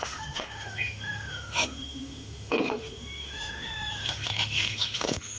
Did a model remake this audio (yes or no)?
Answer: yes